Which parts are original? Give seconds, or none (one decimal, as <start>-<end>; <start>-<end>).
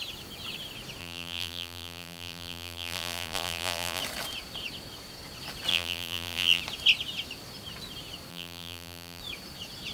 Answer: 0.0-1.0; 4.0-5.7; 6.6-8.3; 9.2-9.9